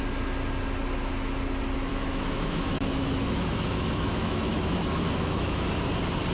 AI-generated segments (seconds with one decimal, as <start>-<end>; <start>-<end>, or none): 1.9-5.7